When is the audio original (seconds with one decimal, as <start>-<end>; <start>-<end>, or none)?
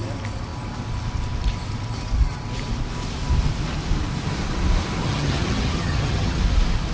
0.0-5.0; 6.4-6.9